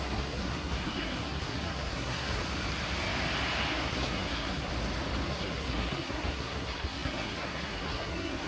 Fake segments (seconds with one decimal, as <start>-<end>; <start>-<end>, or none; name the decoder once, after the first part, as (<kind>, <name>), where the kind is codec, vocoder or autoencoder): 0.0-2.4 (codec, SNAC); 3.7-4.7; 5.3-8.5